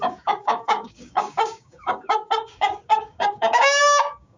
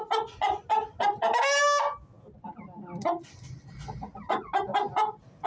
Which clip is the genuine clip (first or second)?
second